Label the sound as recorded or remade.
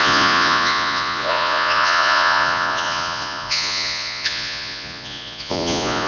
remade